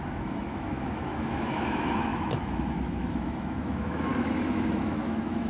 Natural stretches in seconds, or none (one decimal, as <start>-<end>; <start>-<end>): none